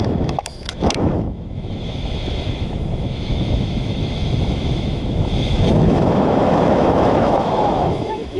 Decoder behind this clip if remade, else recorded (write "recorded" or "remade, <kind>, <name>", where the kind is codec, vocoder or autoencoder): remade, autoencoder, DAC-VAE